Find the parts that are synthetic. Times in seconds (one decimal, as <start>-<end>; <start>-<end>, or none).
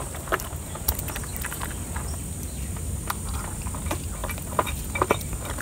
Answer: 4.2-4.8